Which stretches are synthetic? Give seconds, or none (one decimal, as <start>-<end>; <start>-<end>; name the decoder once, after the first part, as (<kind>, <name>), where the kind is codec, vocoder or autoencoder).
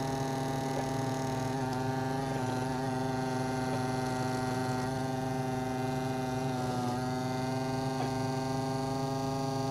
none